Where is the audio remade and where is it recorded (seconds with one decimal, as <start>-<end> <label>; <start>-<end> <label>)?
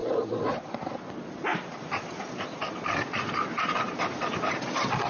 0.0-1.0 remade; 1.0-1.5 recorded; 1.5-4.6 remade; 4.6-5.1 recorded